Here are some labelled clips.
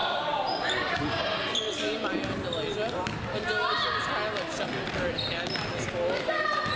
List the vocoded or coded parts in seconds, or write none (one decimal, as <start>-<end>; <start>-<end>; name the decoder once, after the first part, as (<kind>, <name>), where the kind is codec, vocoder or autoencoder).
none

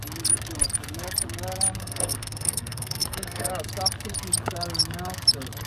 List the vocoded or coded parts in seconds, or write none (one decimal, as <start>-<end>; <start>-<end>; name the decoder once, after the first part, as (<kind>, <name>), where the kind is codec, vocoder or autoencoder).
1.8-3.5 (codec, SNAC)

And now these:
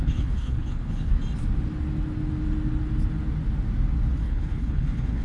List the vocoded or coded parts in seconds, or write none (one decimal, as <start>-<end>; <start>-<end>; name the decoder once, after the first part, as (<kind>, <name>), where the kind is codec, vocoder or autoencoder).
0.0-1.1 (codec, HILCodec); 4.2-5.2